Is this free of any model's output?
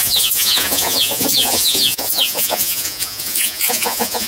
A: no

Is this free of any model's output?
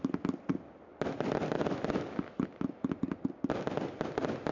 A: yes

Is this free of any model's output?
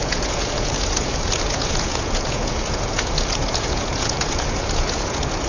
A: no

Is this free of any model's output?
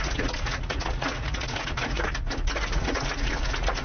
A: no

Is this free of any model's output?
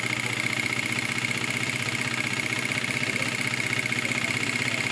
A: yes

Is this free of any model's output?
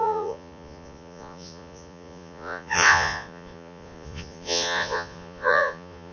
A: no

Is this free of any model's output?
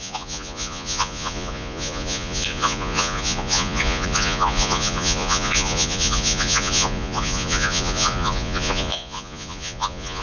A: no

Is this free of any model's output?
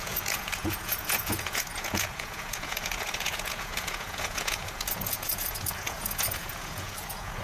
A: no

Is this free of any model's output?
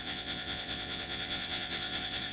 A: no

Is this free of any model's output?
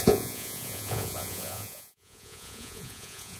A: no